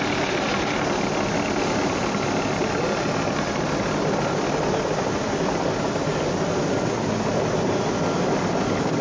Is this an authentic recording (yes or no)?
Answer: yes